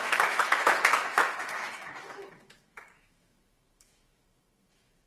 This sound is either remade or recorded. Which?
remade